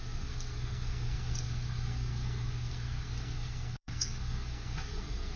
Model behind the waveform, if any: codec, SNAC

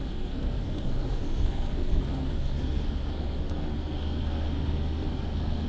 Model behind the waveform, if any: codec, SNAC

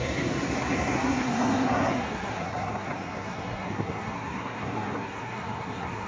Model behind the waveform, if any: codec, SNAC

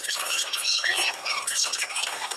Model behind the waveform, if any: codec, SNAC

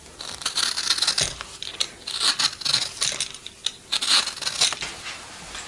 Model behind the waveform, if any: none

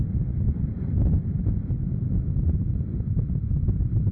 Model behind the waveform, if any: none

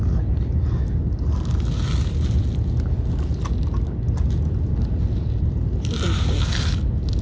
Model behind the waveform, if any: none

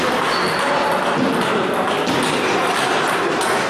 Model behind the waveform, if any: none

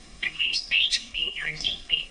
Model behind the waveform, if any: codec, SNAC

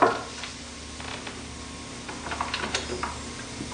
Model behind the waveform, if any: none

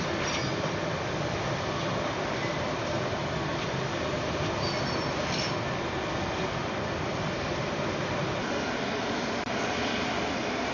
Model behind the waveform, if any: none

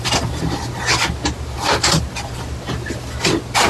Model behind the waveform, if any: none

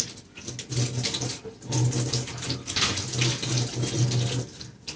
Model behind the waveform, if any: none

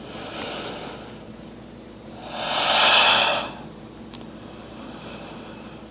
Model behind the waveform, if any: none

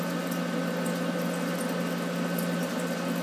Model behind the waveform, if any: none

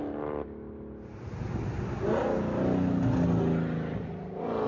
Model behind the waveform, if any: none